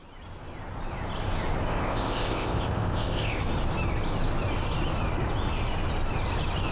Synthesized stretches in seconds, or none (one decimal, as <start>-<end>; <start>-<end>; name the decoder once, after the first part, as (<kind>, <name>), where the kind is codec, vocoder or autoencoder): 1.7-3.4 (codec, ZipCodec)